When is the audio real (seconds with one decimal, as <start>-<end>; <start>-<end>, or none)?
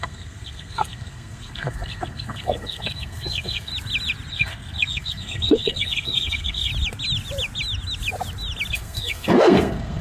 3.7-4.3; 6.7-8.7